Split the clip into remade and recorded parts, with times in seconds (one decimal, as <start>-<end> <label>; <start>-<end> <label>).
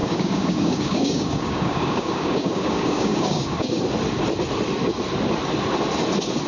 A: 0.0-3.8 remade; 3.8-6.5 recorded